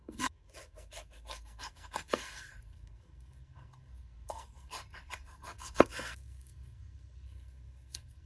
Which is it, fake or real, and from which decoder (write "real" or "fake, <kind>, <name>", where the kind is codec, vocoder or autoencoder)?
fake, codec, SNAC